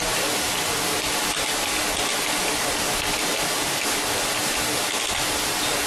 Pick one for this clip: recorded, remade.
recorded